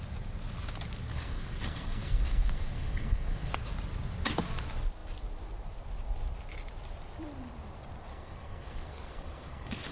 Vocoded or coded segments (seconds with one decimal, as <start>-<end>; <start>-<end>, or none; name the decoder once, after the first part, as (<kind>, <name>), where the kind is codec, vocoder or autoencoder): 1.1-3.5 (codec, SNAC); 8.1-9.9